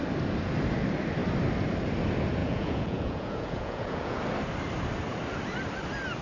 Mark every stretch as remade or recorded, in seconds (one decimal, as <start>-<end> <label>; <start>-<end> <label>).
0.0-2.4 recorded; 2.4-4.2 remade; 4.2-6.2 recorded